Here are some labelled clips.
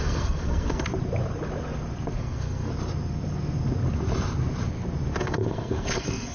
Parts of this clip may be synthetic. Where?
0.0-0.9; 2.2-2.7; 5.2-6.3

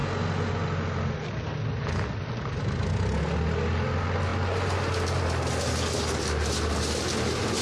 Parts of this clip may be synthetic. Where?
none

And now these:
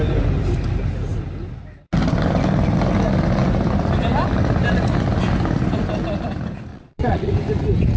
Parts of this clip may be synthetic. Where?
6.7-7.3

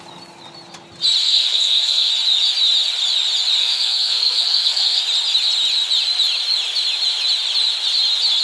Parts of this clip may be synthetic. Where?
1.2-2.1; 3.6-5.0

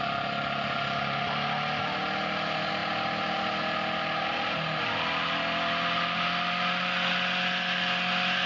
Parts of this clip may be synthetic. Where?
none

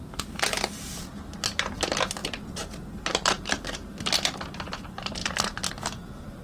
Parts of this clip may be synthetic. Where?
2.2-3.6; 5.2-5.7

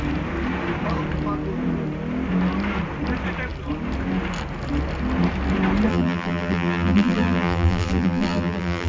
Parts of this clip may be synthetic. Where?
5.9-8.9